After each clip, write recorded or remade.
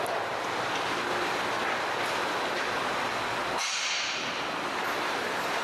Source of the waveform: remade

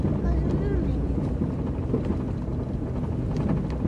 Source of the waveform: recorded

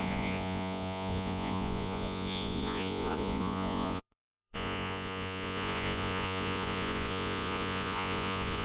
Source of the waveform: remade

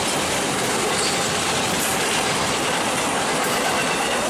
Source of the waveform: recorded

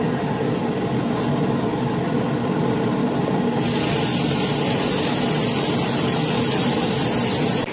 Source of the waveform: recorded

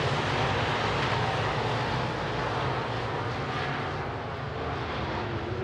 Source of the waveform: recorded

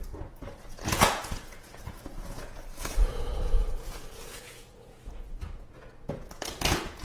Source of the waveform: remade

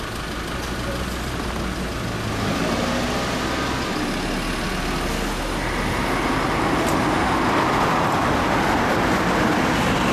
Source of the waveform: recorded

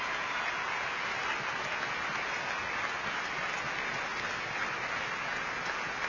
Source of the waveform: recorded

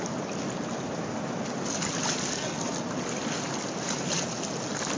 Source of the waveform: recorded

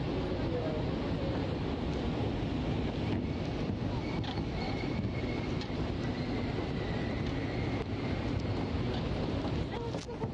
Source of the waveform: recorded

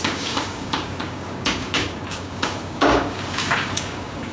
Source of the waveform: remade